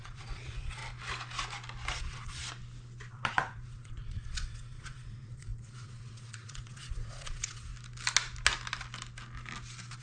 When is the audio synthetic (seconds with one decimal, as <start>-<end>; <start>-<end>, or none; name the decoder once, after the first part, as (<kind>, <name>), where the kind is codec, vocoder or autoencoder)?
0.0-0.8 (vocoder, Vocos); 2.0-2.4; 3.1-7.7